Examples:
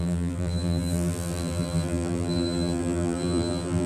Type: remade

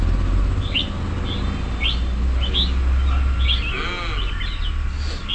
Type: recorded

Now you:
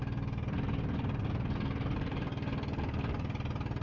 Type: recorded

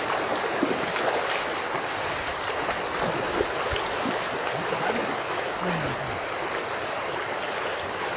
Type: recorded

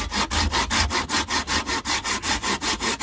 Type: recorded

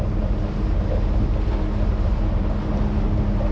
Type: recorded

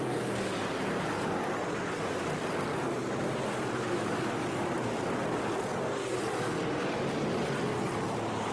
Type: recorded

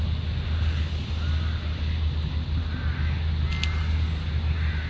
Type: recorded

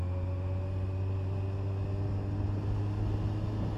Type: recorded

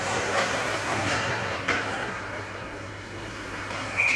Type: remade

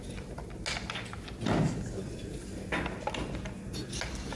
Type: recorded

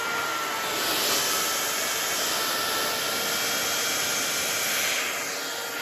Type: recorded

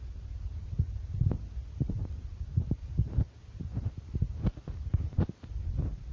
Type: recorded